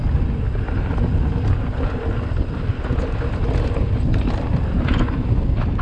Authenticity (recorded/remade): recorded